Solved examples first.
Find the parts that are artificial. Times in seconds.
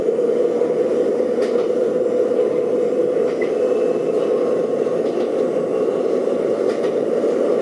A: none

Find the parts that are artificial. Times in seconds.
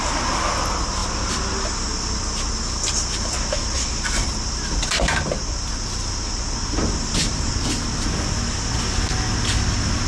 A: 6.8-7.6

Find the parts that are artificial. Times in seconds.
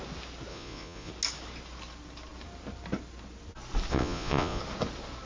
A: 0.5-1.1; 3.9-4.6